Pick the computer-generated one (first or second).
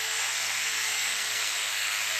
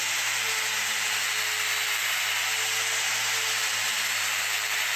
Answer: first